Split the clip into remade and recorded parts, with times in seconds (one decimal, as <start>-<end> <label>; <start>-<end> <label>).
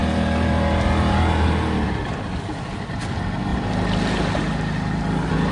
0.0-5.5 recorded